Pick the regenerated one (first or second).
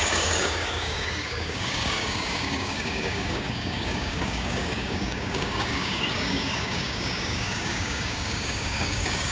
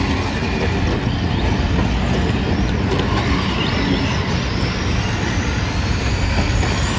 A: first